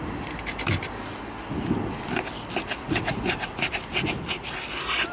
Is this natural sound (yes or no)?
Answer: yes